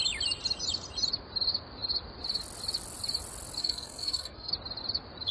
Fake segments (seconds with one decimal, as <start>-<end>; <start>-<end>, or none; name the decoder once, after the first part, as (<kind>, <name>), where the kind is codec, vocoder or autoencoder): 3.6-4.5 (codec, SNAC)